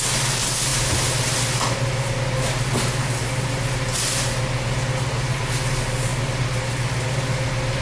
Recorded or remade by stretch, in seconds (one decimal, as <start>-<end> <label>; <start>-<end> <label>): 0.0-7.8 recorded